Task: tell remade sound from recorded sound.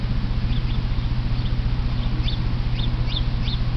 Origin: recorded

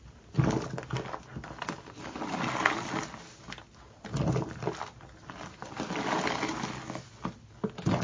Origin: recorded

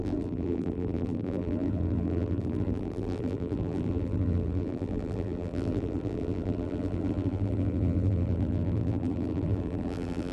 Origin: remade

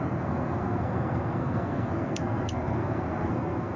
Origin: remade